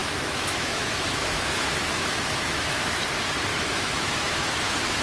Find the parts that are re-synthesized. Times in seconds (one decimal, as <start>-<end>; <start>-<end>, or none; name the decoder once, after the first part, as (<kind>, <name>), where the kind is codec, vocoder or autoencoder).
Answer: 0.0-3.0 (autoencoder, DAC-VAE); 3.5-5.0